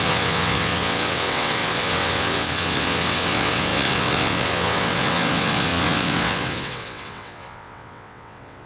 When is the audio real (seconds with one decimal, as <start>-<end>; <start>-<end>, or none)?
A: none